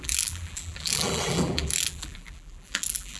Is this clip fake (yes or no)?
yes